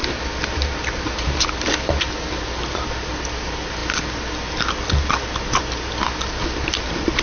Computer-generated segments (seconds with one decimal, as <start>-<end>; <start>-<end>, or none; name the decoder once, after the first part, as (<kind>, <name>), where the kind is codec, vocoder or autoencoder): none